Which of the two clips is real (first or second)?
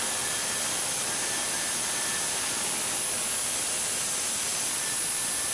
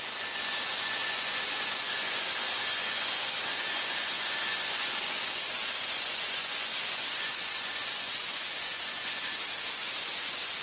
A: first